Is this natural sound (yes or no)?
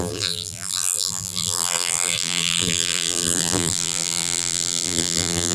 no